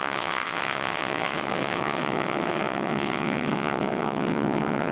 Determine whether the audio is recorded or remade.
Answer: remade